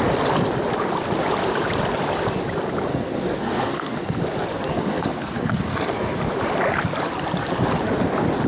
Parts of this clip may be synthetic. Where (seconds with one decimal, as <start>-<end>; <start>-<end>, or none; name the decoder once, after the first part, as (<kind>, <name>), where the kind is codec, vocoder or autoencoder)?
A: 2.9-4.2 (codec, SNAC); 4.7-6.2